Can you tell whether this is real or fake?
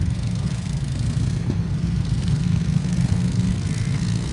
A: fake